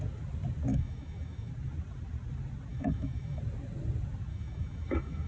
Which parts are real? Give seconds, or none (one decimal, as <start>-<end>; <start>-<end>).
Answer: 0.0-0.7; 1.5-2.7; 3.4-4.3